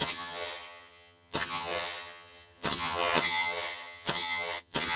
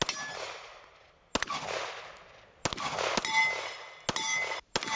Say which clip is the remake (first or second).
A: first